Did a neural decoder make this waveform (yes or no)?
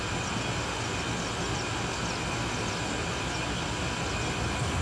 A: no